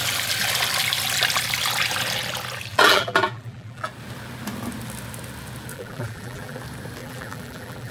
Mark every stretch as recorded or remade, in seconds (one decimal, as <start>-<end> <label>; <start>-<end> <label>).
0.0-2.7 recorded; 2.7-3.9 remade; 3.9-5.7 recorded; 5.7-6.6 remade; 6.6-7.0 recorded; 7.0-7.9 remade